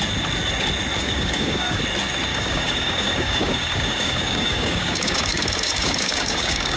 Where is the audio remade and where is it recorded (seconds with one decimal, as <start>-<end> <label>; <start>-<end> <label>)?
0.0-1.0 recorded; 1.0-1.8 remade; 1.8-2.3 recorded; 2.3-6.8 remade